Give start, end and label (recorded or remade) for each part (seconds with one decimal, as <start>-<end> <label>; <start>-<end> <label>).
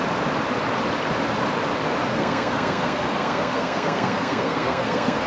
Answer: 0.0-2.1 recorded; 2.1-5.3 remade